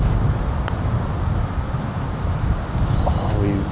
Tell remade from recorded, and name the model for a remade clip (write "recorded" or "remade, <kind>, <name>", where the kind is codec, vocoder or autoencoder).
recorded